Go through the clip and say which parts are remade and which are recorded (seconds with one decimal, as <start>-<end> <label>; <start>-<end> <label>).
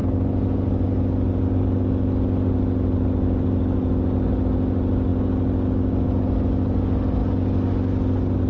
0.0-8.5 recorded